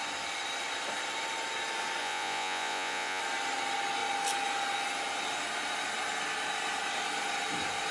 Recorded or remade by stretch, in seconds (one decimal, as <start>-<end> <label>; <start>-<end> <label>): 0.0-2.0 recorded; 2.0-3.2 remade; 3.2-7.9 recorded